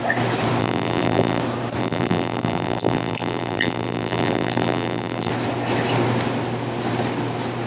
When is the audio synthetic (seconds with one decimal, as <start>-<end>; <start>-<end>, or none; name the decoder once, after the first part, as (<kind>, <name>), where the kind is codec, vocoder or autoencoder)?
0.6-1.4 (vocoder, BigVGAN v2); 1.8-5.3